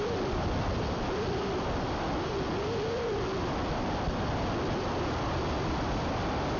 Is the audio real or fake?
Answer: real